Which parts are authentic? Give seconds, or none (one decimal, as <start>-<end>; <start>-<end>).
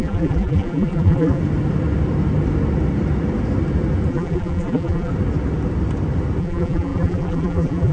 1.4-4.1; 5.1-6.4